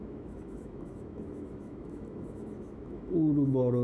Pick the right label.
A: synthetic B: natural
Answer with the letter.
A